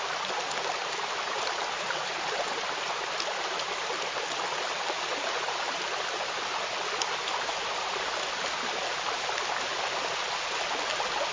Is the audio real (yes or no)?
yes